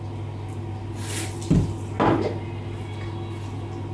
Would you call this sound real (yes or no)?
yes